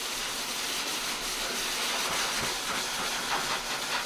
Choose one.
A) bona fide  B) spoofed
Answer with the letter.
A